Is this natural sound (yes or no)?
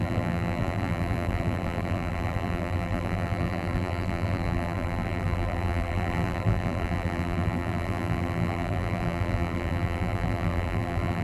no